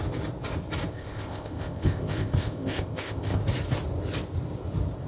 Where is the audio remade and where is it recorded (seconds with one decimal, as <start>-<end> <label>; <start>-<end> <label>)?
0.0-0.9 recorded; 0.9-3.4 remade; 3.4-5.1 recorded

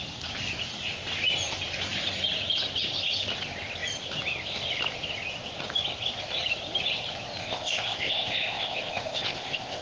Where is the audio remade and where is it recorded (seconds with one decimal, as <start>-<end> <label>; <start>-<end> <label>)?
0.0-7.4 recorded; 7.4-9.8 remade

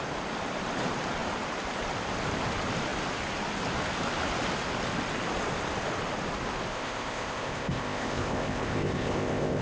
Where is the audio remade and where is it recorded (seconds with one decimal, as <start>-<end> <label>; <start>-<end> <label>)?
0.0-6.7 recorded; 6.7-9.6 remade

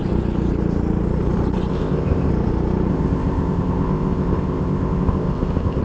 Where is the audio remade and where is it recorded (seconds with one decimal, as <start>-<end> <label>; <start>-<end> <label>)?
0.0-1.7 recorded; 1.7-2.3 remade; 2.3-2.9 recorded; 2.9-5.8 remade